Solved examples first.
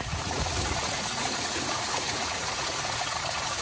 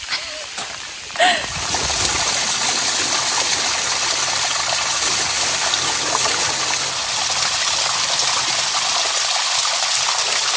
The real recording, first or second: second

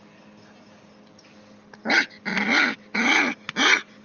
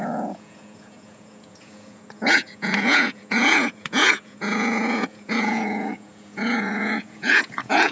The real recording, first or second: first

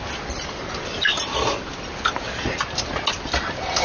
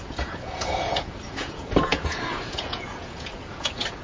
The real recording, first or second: first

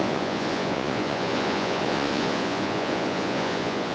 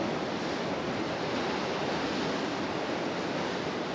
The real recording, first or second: second